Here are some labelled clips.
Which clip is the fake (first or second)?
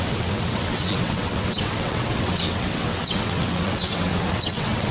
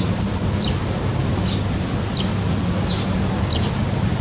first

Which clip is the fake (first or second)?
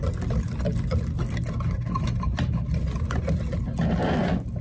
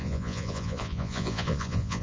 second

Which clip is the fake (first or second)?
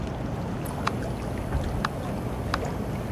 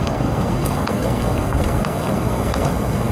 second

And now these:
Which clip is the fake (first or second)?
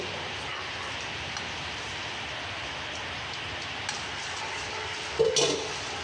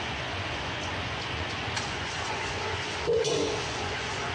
second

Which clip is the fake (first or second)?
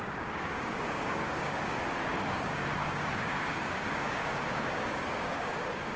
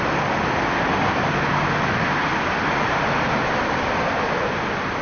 first